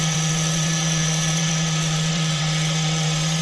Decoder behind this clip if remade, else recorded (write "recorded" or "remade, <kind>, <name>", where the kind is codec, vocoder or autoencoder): remade, vocoder, WaveNeXt